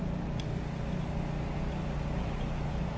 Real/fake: real